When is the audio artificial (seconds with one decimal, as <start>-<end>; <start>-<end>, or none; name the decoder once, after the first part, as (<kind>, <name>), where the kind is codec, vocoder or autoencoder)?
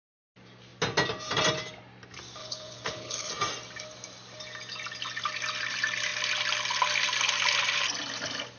2.4-3.3 (codec, HILCodec)